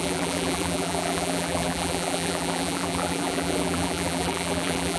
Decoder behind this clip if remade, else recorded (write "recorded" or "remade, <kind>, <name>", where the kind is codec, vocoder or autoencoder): remade, vocoder, BigVGAN v2